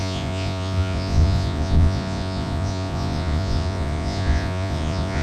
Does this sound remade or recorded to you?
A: remade